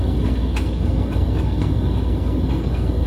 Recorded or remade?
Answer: remade